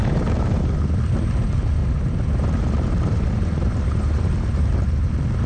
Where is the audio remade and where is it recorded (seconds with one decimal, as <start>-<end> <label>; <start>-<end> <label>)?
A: 0.0-0.6 remade; 0.6-1.8 recorded; 1.8-5.1 remade; 5.1-5.5 recorded